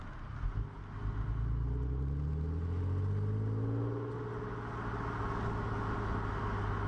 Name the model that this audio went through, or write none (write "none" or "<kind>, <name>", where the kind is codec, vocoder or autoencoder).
none